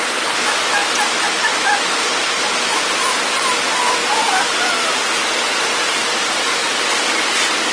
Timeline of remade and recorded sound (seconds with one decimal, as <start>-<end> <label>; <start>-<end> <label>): 0.0-7.7 recorded